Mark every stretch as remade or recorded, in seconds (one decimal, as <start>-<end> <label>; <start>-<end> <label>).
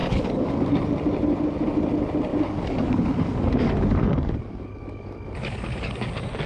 0.0-0.7 remade; 0.7-2.3 recorded; 2.3-6.1 remade; 6.1-6.5 recorded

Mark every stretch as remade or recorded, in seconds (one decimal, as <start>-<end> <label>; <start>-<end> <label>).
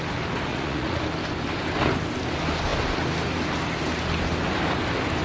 0.0-0.5 recorded; 0.5-1.0 remade; 1.0-5.2 recorded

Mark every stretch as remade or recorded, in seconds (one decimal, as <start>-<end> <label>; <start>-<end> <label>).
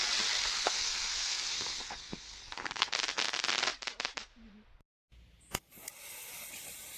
0.0-0.4 recorded; 0.4-2.9 remade; 2.9-7.0 recorded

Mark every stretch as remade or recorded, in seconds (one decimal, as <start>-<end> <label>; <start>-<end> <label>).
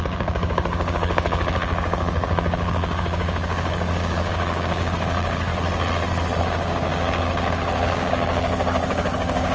0.0-5.5 remade; 5.5-6.4 recorded; 6.4-9.5 remade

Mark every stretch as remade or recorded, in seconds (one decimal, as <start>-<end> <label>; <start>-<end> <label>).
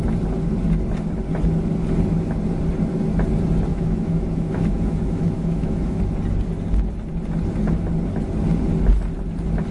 0.0-3.7 recorded; 3.7-6.0 remade; 6.0-9.7 recorded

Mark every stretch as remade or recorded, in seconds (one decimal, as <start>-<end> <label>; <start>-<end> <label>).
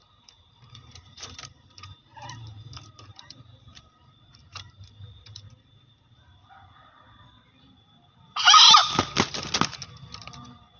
0.0-8.8 remade; 8.8-10.2 recorded; 10.2-10.8 remade